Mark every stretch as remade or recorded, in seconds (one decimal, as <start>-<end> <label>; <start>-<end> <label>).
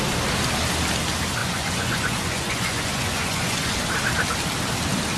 0.0-1.4 recorded; 1.4-3.8 remade; 3.8-5.2 recorded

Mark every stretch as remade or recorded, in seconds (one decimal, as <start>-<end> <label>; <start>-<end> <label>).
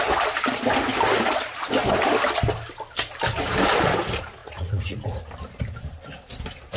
0.0-4.4 recorded; 4.4-5.2 remade; 5.2-6.8 recorded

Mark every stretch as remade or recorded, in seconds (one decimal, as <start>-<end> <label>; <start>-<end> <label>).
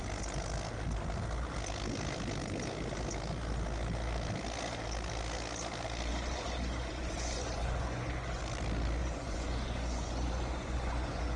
0.0-6.1 recorded; 6.1-8.4 remade; 8.4-9.0 recorded; 9.0-11.4 remade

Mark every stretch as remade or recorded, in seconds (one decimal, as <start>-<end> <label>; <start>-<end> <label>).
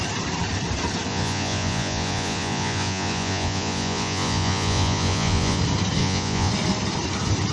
0.0-1.1 recorded; 1.1-5.6 remade; 5.6-6.0 recorded; 6.0-6.5 remade; 6.5-7.5 recorded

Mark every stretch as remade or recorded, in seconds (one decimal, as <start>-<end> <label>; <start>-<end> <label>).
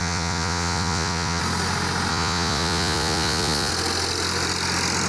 0.0-1.4 remade; 1.4-2.1 recorded; 2.1-3.7 remade; 3.7-5.1 recorded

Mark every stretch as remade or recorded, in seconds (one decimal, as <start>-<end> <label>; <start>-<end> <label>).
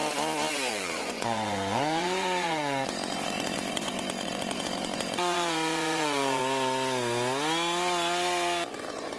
0.0-0.7 recorded; 0.7-6.4 remade; 6.4-8.7 recorded; 8.7-9.2 remade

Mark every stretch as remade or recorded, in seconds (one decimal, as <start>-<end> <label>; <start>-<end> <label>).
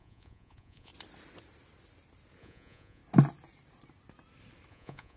0.0-0.9 remade; 0.9-2.4 recorded; 2.4-3.0 remade; 3.0-4.7 recorded; 4.7-5.2 remade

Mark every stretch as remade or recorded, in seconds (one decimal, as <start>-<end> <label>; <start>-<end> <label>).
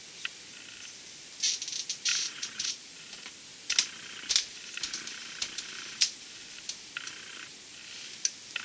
0.0-2.1 recorded; 2.1-3.3 remade; 3.3-8.6 recorded